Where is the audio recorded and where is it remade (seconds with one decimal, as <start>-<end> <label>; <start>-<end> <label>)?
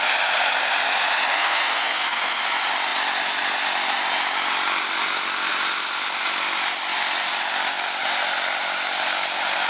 0.0-1.3 recorded; 1.3-2.5 remade; 2.5-9.7 recorded